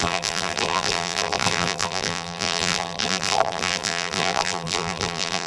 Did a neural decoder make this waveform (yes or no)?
yes